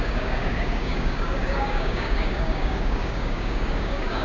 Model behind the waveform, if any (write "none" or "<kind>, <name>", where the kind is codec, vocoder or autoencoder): codec, DAC